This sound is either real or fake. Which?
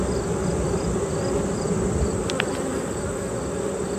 real